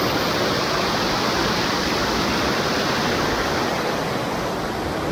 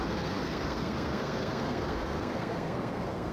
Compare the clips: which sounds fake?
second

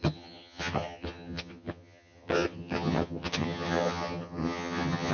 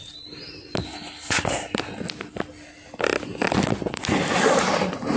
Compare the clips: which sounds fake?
first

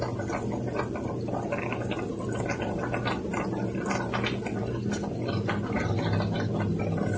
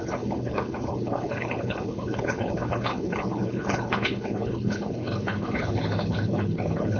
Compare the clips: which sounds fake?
second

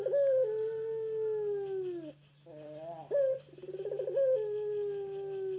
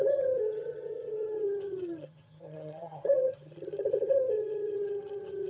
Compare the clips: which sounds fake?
second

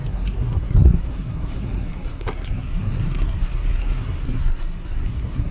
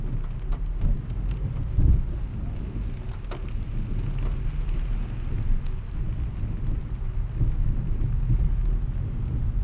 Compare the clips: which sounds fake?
first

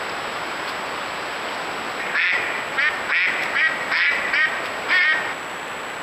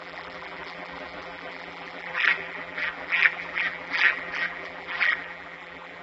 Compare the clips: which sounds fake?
second